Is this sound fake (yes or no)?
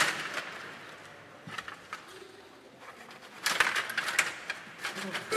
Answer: no